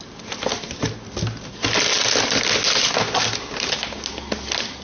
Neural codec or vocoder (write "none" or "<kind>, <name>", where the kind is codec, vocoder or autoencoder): none